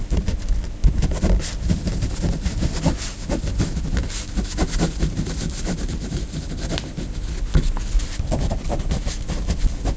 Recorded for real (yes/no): yes